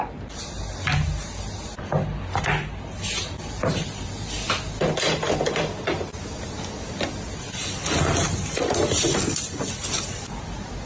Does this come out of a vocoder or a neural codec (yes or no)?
no